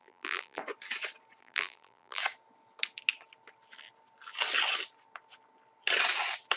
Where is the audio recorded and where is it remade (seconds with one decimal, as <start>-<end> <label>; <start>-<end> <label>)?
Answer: 0.0-0.6 remade; 0.6-1.4 recorded; 1.4-2.2 remade; 2.2-6.6 recorded